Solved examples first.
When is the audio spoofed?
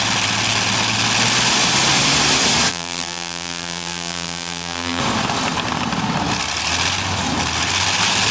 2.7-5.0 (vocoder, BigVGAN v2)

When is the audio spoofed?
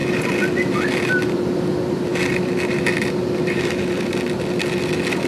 none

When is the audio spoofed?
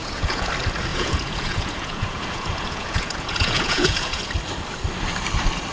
0.0-0.5 (vocoder, Vocos); 0.9-4.3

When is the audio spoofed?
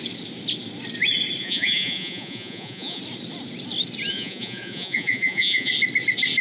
1.4-3.0 (vocoder, Vocos); 4.1-5.7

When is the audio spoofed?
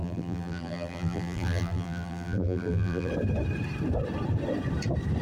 0.0-3.1 (vocoder, BigVGAN v2)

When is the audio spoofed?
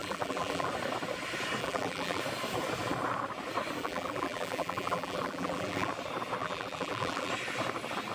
0.0-0.7 (vocoder, BigVGAN v2); 1.6-2.2; 3.8-5.9; 6.4-7.3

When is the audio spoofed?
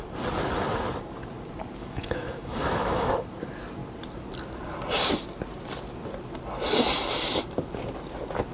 1.8-3.1 (autoencoder, DAC-VAE)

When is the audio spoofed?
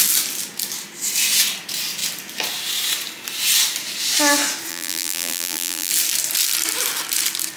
4.7-5.9 (vocoder, BigVGAN v2)